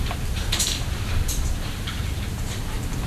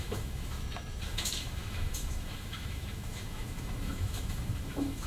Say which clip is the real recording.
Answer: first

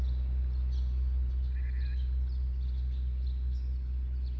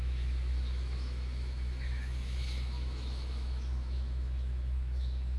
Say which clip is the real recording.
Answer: first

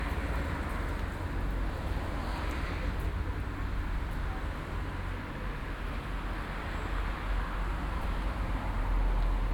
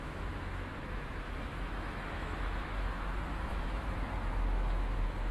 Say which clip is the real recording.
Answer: first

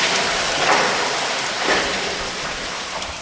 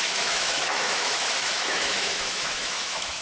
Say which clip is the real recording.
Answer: first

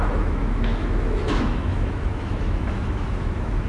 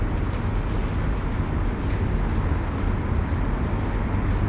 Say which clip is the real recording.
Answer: second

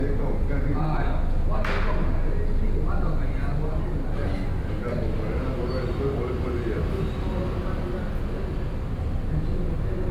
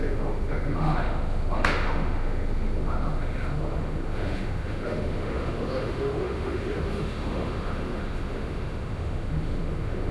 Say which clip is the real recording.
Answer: first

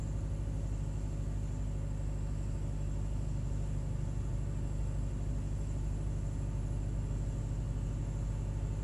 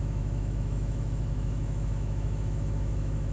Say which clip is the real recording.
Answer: first